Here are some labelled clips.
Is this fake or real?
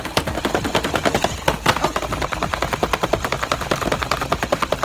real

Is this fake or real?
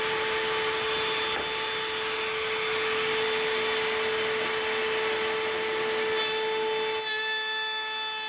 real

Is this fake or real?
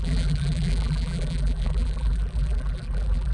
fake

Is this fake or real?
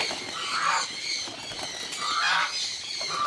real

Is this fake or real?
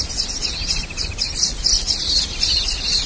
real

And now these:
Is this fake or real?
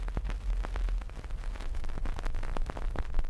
real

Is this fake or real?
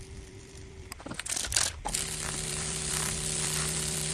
fake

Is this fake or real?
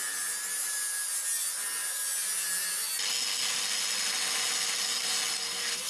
real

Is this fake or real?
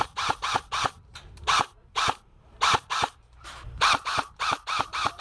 fake